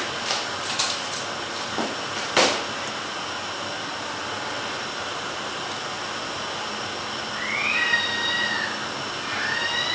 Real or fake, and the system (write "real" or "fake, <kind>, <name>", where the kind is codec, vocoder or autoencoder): real